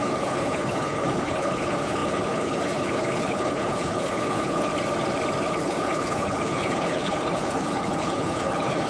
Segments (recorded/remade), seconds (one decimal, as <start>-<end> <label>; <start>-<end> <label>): 0.0-4.7 remade; 4.7-5.5 recorded; 5.5-8.9 remade